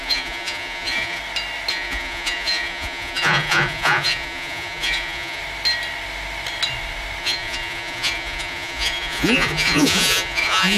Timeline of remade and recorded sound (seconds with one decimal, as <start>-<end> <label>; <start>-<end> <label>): 0.0-1.2 remade; 1.2-1.7 recorded; 1.7-5.4 remade; 5.4-7.2 recorded; 7.2-10.8 remade